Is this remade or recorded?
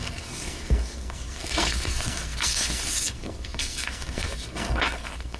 remade